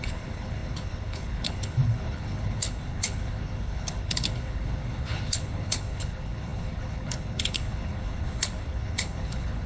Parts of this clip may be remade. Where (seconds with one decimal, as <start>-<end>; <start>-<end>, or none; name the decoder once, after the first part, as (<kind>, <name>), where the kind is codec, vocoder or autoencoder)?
0.0-9.7 (codec, HILCodec)